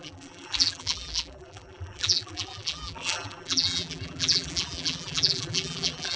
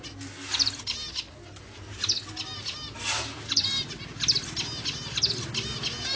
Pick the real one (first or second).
second